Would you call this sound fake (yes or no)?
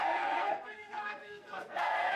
yes